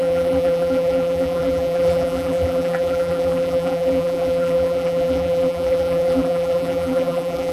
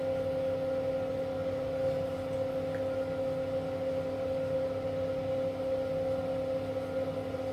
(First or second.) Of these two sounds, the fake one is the first